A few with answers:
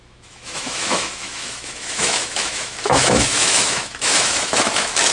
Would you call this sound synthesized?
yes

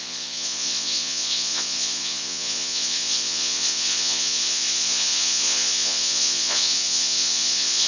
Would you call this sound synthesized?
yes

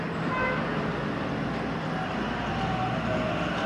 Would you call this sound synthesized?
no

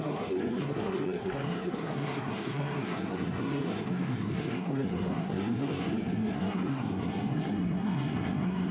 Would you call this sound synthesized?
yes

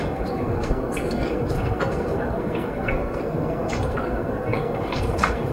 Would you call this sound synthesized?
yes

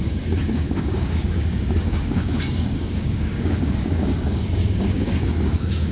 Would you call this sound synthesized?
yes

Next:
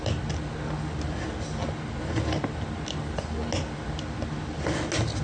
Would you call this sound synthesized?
no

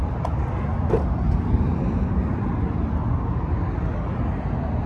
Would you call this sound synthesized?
no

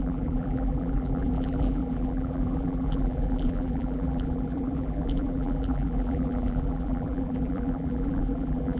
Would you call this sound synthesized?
yes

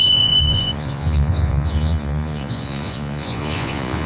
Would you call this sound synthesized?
yes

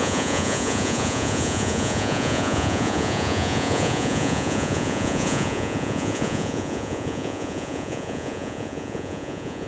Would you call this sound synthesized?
yes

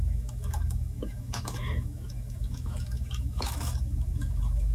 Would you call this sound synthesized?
yes